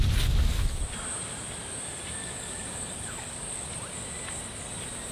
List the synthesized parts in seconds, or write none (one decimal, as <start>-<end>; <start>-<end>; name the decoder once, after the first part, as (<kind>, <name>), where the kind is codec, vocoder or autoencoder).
2.2-3.7 (codec, DAC)